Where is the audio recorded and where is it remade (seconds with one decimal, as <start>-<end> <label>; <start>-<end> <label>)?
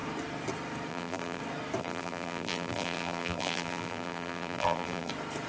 0.0-0.9 recorded; 0.9-1.4 remade; 1.4-1.8 recorded; 1.8-5.1 remade; 5.1-5.5 recorded